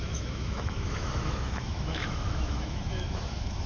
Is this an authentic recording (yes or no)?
no